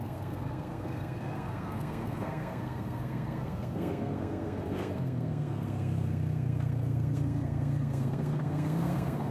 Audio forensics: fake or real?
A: fake